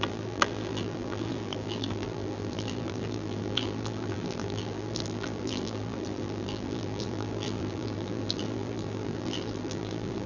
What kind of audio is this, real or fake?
fake